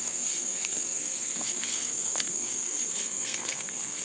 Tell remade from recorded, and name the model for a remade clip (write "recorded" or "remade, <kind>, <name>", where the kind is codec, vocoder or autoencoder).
remade, codec, SNAC